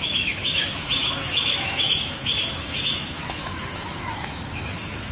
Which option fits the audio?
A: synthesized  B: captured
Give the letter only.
A